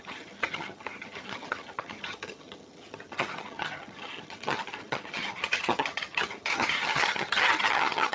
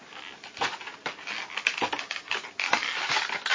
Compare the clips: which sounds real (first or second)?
second